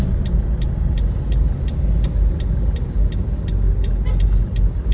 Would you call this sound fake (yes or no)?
no